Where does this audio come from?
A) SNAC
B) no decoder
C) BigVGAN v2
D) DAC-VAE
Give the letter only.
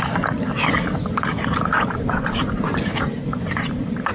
C